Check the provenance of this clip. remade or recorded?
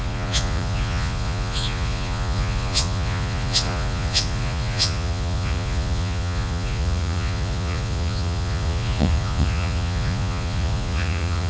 remade